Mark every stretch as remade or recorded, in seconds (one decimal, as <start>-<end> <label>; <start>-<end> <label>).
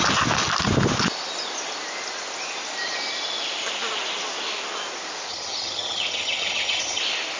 0.0-5.3 recorded; 5.3-7.0 remade; 7.0-7.4 recorded